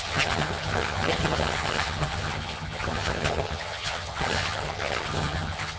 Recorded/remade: remade